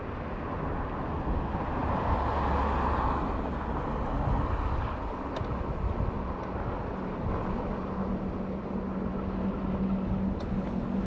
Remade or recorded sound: recorded